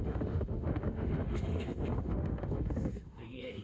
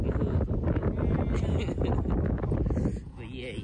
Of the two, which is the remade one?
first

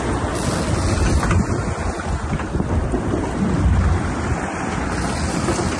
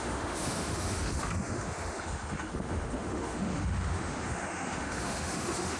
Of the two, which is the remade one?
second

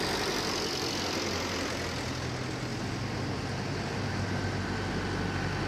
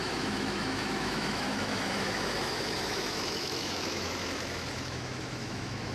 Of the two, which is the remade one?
second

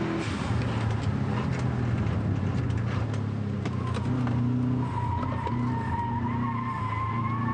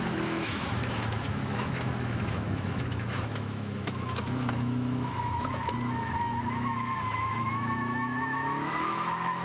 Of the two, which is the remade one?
second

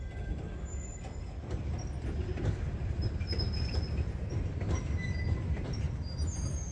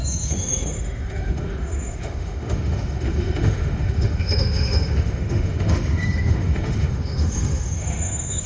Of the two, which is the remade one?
second